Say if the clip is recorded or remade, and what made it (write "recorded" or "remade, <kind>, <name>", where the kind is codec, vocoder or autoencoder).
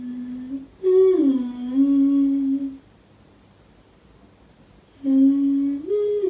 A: recorded